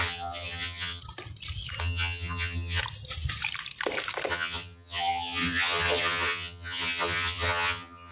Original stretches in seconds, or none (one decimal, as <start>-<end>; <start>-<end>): 1.0-1.8; 2.8-4.3